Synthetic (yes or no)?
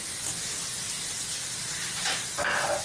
no